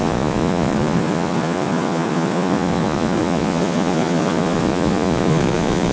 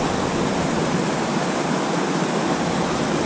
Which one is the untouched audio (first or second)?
second